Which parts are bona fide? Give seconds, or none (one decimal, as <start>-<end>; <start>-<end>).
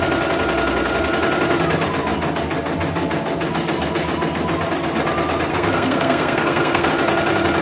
0.0-5.5; 6.9-7.6